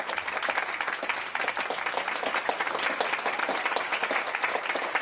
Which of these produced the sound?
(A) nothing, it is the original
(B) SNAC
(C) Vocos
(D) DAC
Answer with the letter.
A